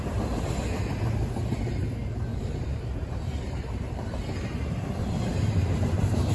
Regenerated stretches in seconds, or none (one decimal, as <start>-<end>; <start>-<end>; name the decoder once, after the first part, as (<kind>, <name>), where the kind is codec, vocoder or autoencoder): 2.3-6.3 (vocoder, BigVGAN v2)